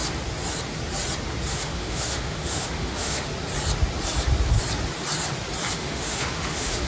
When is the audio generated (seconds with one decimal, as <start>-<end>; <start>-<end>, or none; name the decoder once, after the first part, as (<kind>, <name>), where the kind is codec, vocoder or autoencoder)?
1.5-3.3 (autoencoder, DAC-VAE); 5.7-6.9